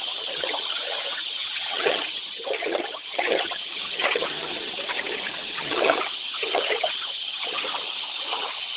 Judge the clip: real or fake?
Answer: fake